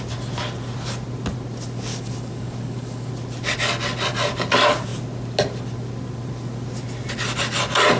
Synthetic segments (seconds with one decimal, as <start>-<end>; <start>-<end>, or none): 1.9-3.1